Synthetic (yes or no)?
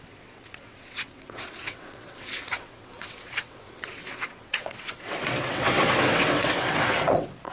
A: yes